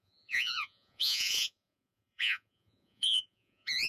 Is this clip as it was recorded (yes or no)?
no